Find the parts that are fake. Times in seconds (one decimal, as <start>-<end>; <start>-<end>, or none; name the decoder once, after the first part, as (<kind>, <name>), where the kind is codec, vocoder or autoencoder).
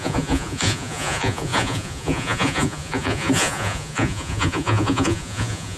0.0-5.8 (vocoder, Vocos)